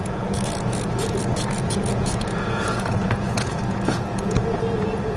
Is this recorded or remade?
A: remade